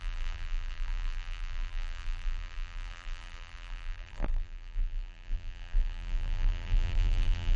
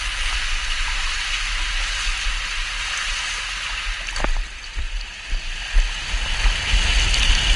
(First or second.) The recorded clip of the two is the second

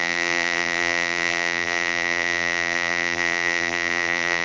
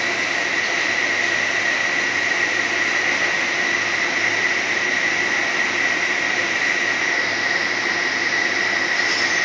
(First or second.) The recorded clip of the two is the second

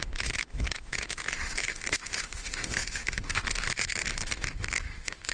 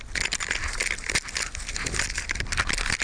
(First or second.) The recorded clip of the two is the second